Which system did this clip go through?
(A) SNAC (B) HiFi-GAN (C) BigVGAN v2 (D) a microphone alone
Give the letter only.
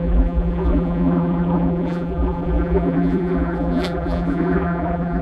C